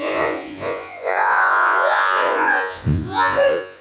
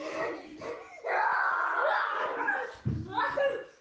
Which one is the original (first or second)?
second